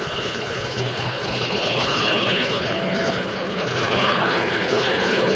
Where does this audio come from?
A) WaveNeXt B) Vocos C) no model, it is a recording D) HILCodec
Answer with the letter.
D